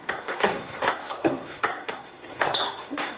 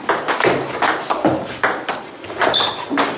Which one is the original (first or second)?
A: second